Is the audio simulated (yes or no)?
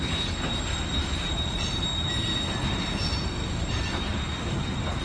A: no